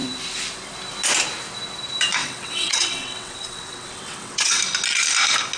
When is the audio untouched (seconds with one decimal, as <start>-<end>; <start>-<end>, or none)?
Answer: 0.0-2.2; 4.6-5.6